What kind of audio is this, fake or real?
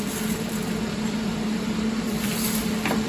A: fake